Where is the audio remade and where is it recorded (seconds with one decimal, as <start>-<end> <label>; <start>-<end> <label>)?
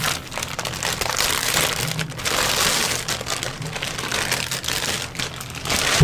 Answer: 0.0-6.0 recorded